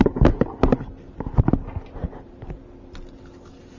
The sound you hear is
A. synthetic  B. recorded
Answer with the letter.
B